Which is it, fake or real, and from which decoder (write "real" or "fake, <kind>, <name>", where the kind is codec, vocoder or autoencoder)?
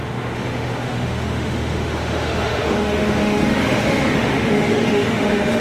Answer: fake, autoencoder, DAC-VAE